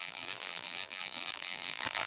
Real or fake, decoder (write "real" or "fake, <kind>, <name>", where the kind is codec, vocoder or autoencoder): fake, vocoder, BigVGAN v2